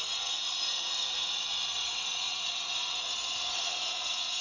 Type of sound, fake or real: fake